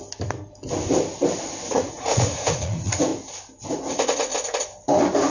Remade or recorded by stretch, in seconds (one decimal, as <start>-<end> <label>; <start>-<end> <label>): 0.0-1.7 recorded; 1.7-3.1 remade; 3.1-3.7 recorded; 3.7-4.3 remade; 4.3-5.3 recorded